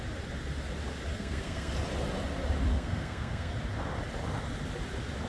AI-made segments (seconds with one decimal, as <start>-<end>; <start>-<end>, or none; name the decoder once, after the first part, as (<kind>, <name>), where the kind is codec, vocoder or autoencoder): 1.1-1.7 (codec, SNAC); 2.7-3.5